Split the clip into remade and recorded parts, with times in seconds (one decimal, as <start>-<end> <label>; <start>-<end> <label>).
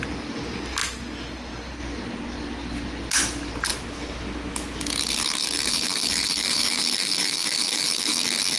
0.0-3.7 recorded; 3.7-8.1 remade; 8.1-8.6 recorded